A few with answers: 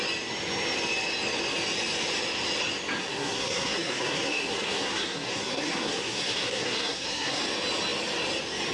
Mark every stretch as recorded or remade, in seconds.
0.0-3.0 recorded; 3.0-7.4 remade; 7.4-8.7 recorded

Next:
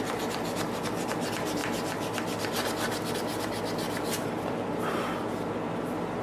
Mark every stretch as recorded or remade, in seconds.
0.0-6.2 recorded

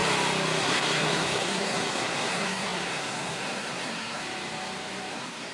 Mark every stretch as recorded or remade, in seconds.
0.0-0.6 recorded; 0.6-4.2 remade; 4.2-5.1 recorded; 5.1-5.5 remade

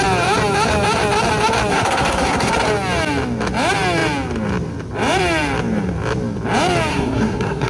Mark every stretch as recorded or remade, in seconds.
0.0-1.7 recorded; 1.7-2.5 remade; 2.5-6.9 recorded; 6.9-7.7 remade

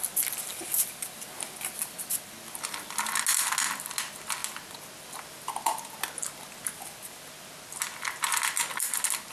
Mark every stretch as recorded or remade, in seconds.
0.0-9.3 recorded